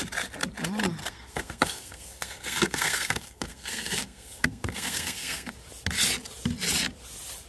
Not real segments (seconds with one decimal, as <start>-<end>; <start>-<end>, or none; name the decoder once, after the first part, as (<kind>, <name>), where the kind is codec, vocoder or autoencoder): 1.0-5.5 (codec, SNAC)